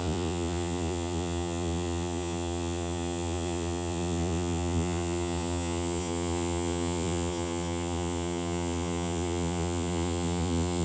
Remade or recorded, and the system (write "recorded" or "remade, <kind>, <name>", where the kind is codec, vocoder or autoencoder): remade, vocoder, Vocos